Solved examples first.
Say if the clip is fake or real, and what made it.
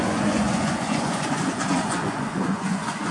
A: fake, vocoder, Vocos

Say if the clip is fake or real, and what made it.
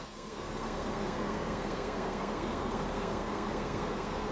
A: fake, codec, SNAC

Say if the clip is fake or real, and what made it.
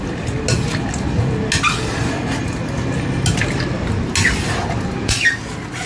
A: real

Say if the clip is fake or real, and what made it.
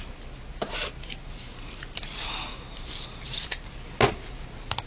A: real